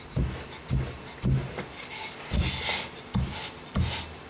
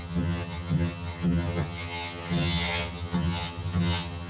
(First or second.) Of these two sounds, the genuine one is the first